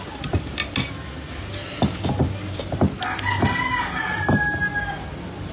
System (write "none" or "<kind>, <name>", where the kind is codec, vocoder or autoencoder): none